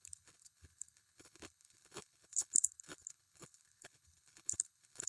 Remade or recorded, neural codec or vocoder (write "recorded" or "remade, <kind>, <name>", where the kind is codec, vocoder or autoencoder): remade, codec, HILCodec